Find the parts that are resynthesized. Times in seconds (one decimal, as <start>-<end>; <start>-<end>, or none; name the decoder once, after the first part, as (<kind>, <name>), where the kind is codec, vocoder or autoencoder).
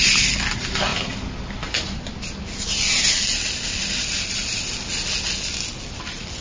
none